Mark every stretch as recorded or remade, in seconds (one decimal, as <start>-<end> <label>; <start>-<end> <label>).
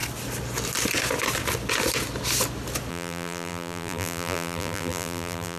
0.0-2.9 recorded; 2.9-5.6 remade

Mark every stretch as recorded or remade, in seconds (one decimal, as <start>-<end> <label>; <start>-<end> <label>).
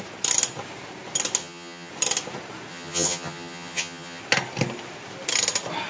0.0-1.4 recorded; 1.4-1.9 remade; 1.9-2.7 recorded; 2.7-4.2 remade; 4.2-5.9 recorded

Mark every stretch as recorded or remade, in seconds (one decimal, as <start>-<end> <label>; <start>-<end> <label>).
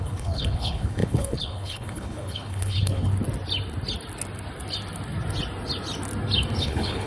0.0-3.1 remade; 3.1-6.6 recorded; 6.6-7.1 remade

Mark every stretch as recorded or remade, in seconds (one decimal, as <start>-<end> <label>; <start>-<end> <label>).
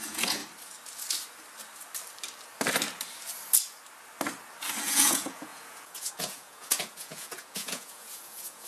0.0-0.4 remade; 0.4-4.8 recorded; 4.8-8.7 remade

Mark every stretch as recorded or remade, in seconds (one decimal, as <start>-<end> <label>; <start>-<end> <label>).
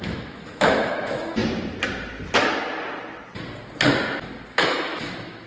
0.0-1.4 remade; 1.4-4.5 recorded; 4.5-5.5 remade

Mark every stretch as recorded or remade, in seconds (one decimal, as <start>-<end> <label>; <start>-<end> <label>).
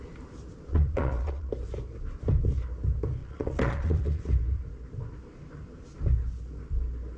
0.0-0.7 recorded; 0.7-1.5 remade; 1.5-3.2 recorded; 3.2-4.2 remade; 4.2-7.2 recorded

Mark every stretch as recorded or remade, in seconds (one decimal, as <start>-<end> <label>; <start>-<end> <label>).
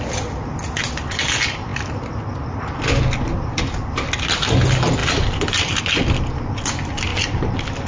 0.0-1.7 recorded; 1.7-3.8 remade; 3.8-5.0 recorded; 5.0-5.8 remade; 5.8-7.9 recorded